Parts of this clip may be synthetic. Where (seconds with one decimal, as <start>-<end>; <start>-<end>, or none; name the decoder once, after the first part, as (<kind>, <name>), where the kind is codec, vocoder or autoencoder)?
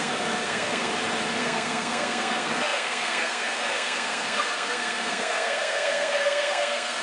0.0-0.9 (codec, SNAC); 1.4-7.0